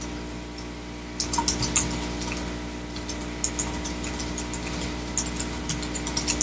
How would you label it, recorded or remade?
recorded